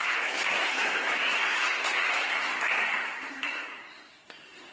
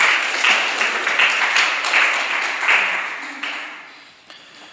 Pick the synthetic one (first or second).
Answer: first